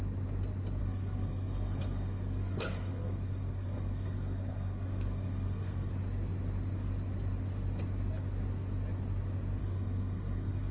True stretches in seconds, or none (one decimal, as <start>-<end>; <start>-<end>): 0.0-0.8; 5.9-9.6